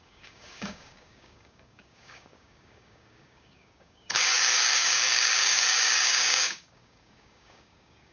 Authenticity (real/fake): fake